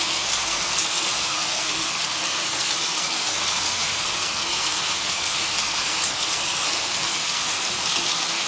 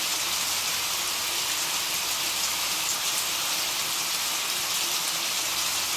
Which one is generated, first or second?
first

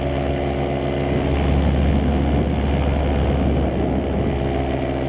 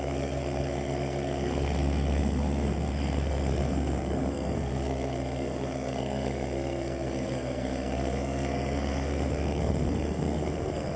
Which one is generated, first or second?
second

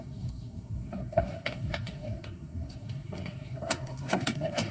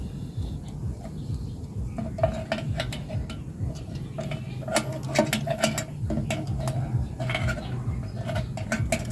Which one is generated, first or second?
first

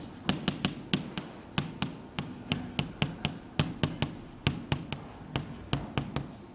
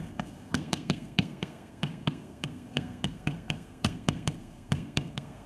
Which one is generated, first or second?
second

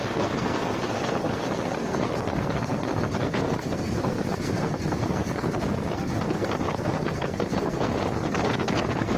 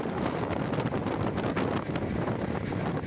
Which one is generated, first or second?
first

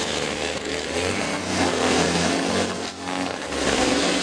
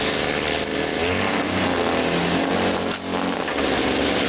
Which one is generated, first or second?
first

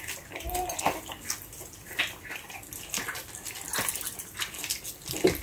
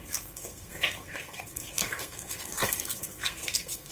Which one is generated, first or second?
second